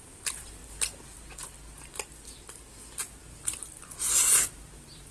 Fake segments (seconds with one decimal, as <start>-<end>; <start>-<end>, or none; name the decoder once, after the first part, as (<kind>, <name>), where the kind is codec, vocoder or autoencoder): 0.0-0.6 (vocoder, BigVGAN v2); 2.7-5.1